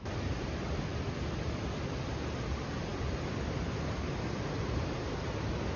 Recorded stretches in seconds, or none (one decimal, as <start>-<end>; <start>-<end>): 0.0-5.8